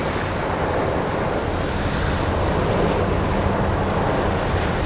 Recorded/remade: recorded